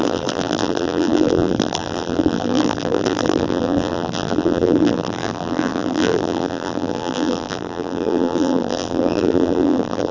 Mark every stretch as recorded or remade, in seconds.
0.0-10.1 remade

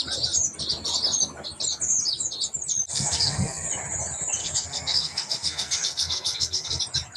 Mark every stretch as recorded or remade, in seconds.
0.0-2.9 recorded; 2.9-3.7 remade; 3.7-4.4 recorded; 4.4-6.8 remade; 6.8-7.2 recorded

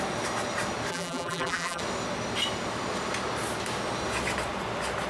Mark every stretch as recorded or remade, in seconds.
0.0-0.9 recorded; 0.9-1.8 remade; 1.8-5.1 recorded